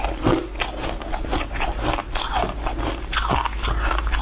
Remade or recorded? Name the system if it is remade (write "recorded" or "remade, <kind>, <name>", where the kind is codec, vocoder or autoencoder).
recorded